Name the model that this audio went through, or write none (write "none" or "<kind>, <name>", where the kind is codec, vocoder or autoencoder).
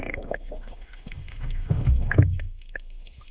autoencoder, DAC-VAE